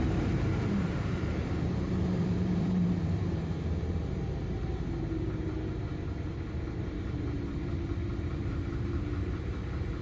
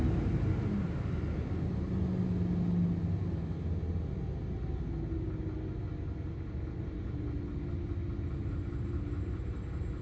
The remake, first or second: first